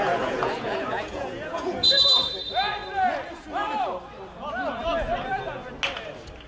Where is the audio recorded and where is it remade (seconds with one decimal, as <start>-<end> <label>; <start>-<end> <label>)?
0.0-1.9 remade; 1.9-6.5 recorded